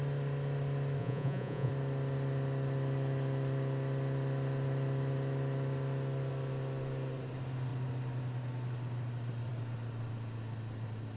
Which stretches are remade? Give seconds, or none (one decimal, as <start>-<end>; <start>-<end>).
1.0-1.7